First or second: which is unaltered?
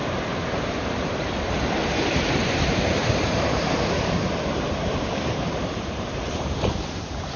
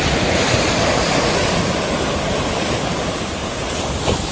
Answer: second